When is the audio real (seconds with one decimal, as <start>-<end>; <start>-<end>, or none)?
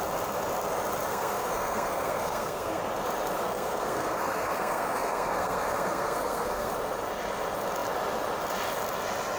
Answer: 0.0-1.1; 2.8-3.4; 6.7-9.4